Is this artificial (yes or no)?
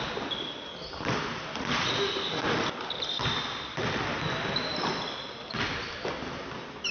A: no